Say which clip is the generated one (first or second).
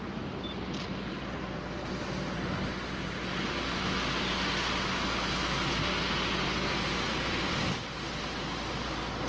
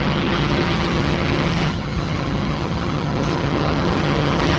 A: second